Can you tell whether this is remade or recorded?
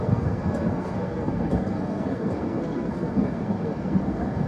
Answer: remade